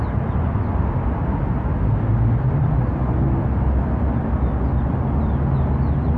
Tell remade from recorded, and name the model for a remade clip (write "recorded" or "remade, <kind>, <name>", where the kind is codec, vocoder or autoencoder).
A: recorded